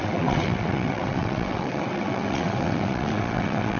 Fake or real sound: fake